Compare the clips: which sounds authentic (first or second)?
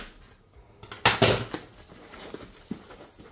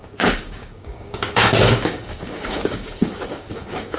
first